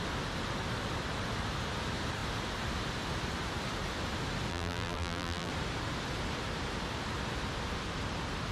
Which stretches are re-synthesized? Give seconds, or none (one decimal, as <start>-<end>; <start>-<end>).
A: 4.5-5.5